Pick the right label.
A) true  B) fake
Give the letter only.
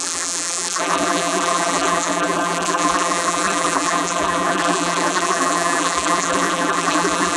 B